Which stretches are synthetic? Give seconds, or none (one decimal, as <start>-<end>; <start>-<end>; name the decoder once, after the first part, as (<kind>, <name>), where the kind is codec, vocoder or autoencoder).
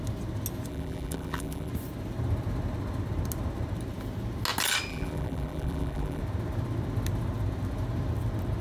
0.7-1.7 (vocoder, BigVGAN v2); 4.9-6.2